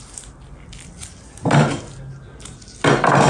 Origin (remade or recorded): recorded